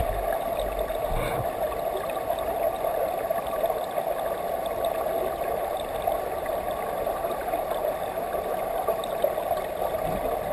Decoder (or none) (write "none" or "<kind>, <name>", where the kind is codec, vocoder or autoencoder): none